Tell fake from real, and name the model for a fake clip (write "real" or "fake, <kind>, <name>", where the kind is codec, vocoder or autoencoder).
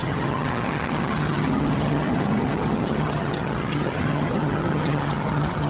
fake, vocoder, HiFi-GAN